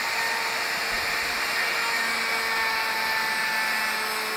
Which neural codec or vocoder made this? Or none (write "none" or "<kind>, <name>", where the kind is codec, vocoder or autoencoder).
none